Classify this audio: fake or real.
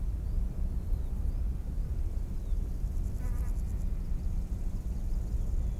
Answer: real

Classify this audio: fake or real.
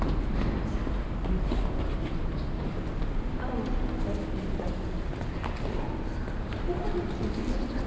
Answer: real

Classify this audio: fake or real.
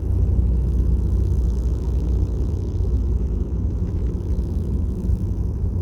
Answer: fake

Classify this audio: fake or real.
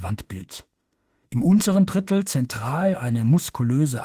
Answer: fake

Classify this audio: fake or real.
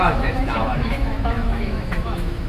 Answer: fake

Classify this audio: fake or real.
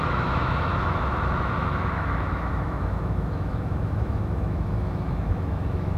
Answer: fake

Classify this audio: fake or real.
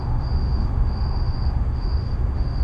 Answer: fake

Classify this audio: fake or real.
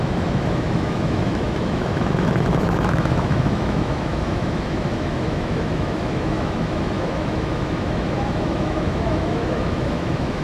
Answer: fake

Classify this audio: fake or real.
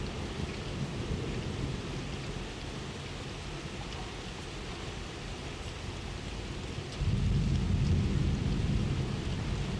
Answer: real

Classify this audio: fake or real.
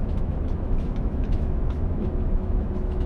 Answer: fake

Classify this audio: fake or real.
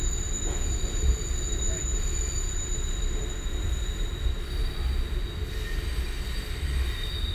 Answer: real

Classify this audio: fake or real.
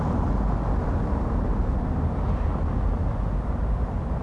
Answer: real